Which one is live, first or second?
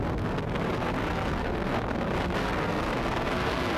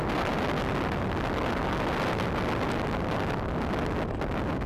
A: second